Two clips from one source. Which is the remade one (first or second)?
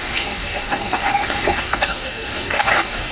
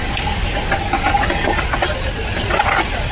first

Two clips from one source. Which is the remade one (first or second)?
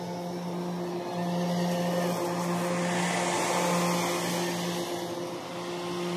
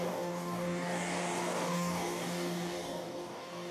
second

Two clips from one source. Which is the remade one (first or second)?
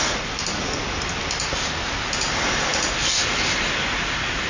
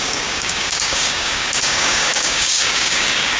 second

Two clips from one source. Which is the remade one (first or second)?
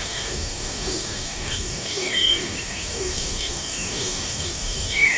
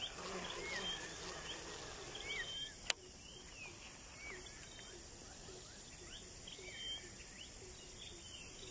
first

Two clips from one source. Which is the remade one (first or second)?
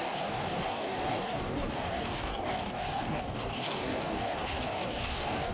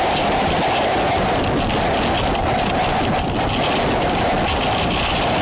first